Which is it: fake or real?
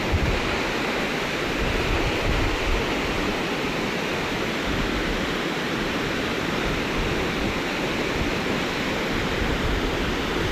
real